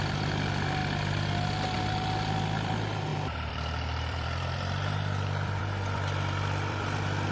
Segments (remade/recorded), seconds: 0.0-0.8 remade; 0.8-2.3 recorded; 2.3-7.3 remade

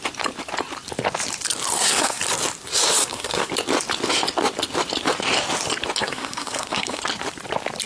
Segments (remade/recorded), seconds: 0.0-1.7 recorded; 1.7-2.2 remade; 2.2-3.0 recorded; 3.0-3.5 remade; 3.5-6.0 recorded; 6.0-7.0 remade; 7.0-7.9 recorded

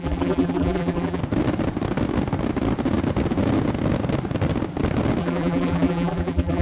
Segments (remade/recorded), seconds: 0.0-1.2 remade; 1.2-5.2 recorded; 5.2-6.6 remade